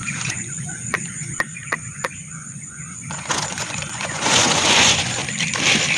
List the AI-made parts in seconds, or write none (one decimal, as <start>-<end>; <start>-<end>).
0.0-5.2